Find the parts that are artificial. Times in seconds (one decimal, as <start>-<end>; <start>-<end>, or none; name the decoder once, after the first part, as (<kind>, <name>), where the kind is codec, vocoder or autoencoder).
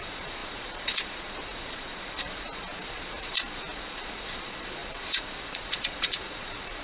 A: 0.0-6.8 (vocoder, Vocos)